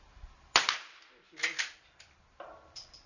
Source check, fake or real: real